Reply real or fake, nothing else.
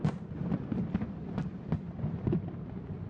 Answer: real